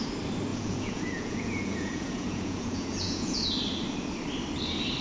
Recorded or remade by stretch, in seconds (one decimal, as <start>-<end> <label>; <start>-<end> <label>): 0.0-0.5 recorded; 0.5-3.5 remade; 3.5-5.0 recorded